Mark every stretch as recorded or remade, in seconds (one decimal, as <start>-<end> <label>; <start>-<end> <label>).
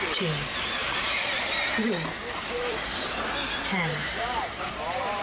0.0-0.8 recorded; 0.8-1.4 remade; 1.4-1.8 recorded; 1.8-3.3 remade; 3.3-4.0 recorded; 4.0-5.2 remade